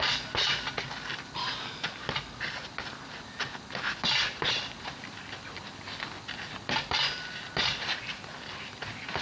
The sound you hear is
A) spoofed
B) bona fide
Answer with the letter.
B